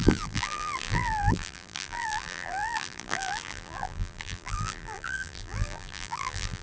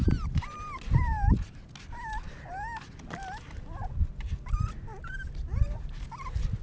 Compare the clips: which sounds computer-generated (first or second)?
first